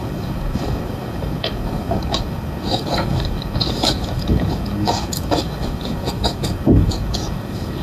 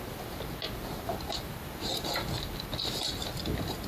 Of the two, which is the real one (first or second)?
second